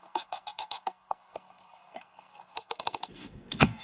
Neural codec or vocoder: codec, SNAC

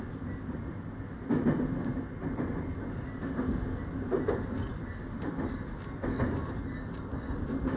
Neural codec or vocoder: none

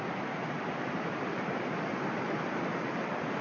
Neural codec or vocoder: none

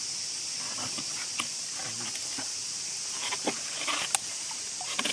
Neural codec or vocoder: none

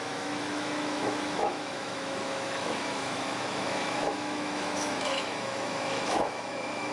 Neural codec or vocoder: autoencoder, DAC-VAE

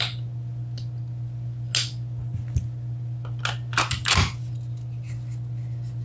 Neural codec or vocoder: none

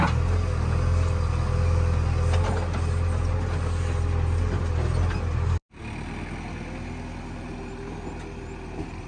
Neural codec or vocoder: none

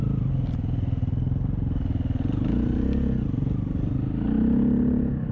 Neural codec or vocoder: none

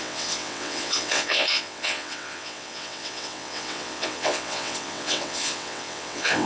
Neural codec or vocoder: vocoder, WaveNeXt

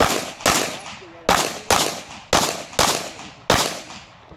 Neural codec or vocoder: none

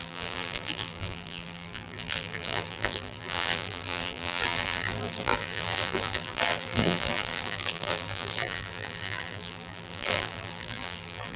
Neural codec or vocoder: vocoder, BigVGAN v2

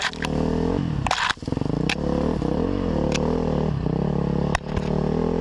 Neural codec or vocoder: none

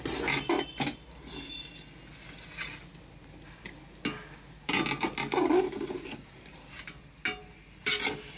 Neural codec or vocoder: none